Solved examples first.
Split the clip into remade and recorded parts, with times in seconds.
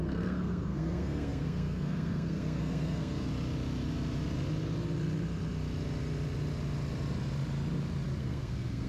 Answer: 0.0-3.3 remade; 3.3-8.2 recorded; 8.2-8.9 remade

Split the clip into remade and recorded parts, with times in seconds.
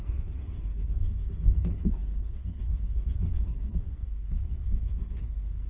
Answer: 0.0-5.7 remade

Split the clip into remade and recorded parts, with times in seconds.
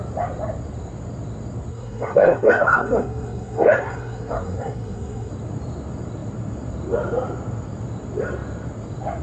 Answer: 0.0-1.7 recorded; 1.7-5.3 remade; 5.3-9.2 recorded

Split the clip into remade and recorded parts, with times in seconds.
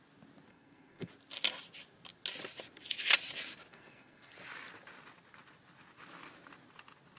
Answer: 0.0-0.5 recorded; 0.5-1.1 remade; 1.1-3.7 recorded; 3.7-4.3 remade; 4.3-7.2 recorded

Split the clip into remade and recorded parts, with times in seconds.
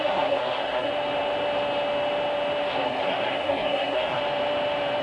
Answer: 0.0-0.9 remade; 0.9-2.7 recorded; 2.7-4.2 remade; 4.2-5.0 recorded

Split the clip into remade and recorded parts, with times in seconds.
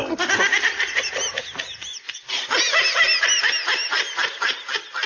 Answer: 0.0-5.1 recorded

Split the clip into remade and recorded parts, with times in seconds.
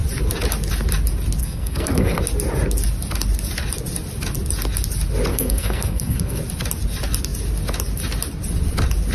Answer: 0.0-1.4 recorded; 1.4-2.2 remade; 2.2-5.3 recorded; 5.3-6.4 remade; 6.4-9.1 recorded